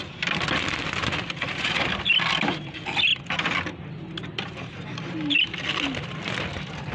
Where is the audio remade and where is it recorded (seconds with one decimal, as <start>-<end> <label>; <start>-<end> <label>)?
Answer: 0.0-6.9 recorded